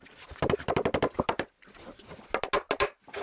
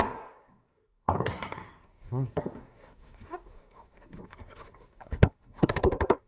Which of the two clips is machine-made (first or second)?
second